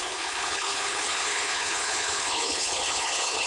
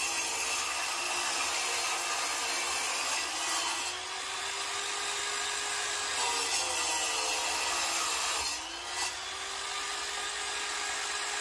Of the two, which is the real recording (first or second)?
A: second